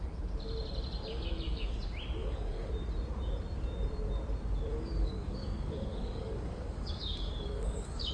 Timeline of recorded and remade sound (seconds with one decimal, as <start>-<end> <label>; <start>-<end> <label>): 0.0-1.1 recorded; 1.1-1.8 remade; 1.8-2.2 recorded; 2.2-2.7 remade; 2.7-4.7 recorded; 4.7-8.1 remade